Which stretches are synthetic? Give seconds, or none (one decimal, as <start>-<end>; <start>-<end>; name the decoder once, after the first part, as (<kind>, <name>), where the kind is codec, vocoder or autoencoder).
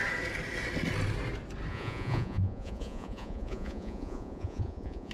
1.7-5.1 (vocoder, Vocos)